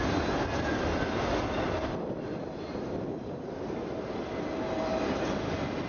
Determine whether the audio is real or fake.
real